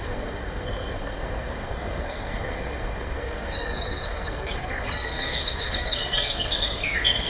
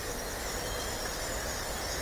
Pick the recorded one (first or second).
second